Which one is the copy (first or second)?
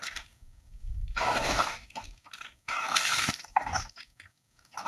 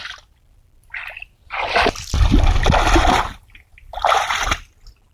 first